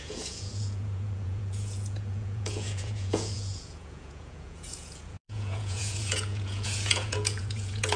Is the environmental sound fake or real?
fake